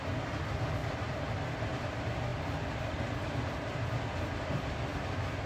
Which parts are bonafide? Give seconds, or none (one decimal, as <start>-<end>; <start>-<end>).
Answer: 0.0-5.5